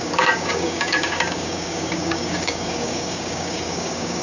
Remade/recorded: remade